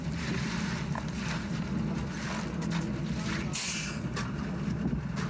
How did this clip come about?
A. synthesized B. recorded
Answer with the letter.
B